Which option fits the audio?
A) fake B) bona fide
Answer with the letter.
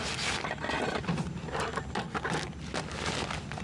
B